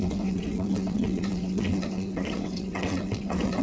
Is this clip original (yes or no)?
no